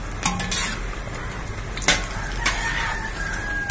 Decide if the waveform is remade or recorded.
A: recorded